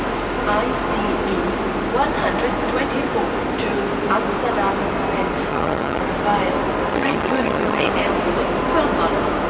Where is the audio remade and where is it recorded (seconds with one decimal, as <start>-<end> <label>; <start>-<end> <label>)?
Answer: 0.0-5.5 recorded; 5.5-6.0 remade; 6.0-6.9 recorded; 6.9-7.9 remade; 7.9-9.5 recorded